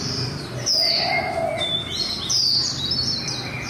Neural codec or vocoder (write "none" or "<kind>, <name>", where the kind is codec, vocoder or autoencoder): none